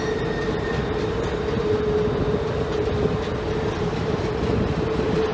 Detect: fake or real real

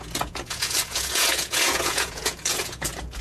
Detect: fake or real fake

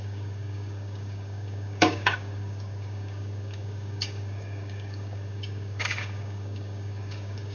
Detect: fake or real fake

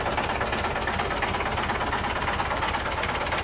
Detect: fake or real real